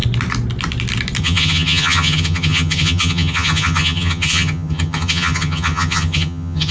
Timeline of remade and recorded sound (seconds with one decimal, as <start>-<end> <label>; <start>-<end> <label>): 0.0-1.2 recorded; 1.2-6.7 remade